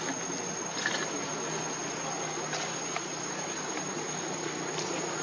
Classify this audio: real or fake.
real